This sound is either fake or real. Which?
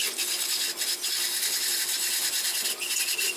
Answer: real